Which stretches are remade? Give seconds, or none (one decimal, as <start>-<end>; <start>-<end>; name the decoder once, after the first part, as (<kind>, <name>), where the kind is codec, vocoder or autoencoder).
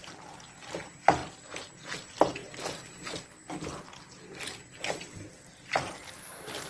none